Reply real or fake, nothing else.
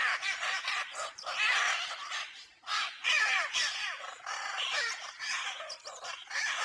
fake